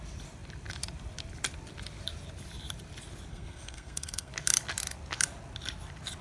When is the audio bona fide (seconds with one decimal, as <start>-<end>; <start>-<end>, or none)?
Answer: 0.0-3.3; 4.3-6.2